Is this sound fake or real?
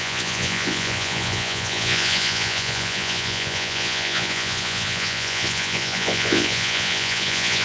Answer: fake